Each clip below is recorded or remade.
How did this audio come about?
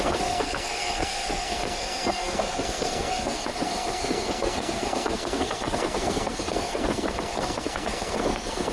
remade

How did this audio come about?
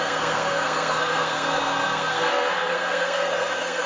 remade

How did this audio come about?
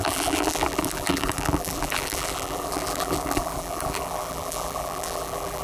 remade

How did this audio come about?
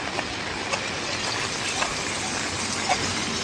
recorded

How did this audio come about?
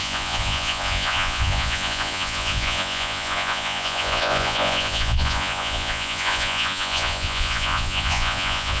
remade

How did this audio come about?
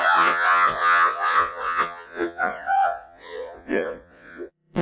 remade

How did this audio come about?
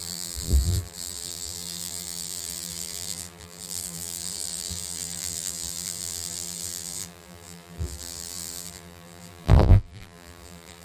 remade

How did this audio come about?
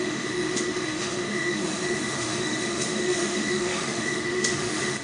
remade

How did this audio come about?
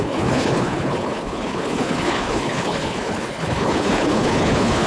remade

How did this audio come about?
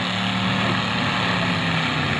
recorded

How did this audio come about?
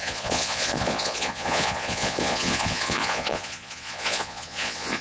remade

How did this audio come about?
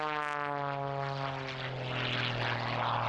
recorded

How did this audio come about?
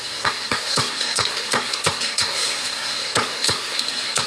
remade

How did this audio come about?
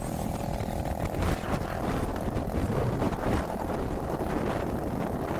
recorded